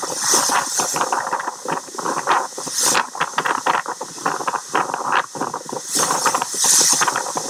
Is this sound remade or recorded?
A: recorded